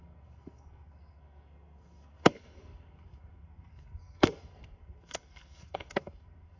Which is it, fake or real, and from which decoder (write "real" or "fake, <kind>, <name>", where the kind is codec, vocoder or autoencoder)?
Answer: fake, codec, SNAC